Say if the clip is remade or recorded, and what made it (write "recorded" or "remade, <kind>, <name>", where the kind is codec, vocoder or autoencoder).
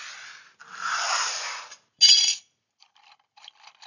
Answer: recorded